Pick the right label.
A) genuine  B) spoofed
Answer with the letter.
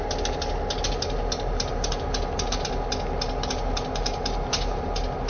A